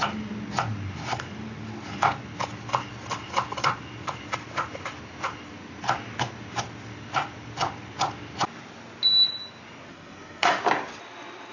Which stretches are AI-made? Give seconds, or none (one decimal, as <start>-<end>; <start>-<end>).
9.9-10.6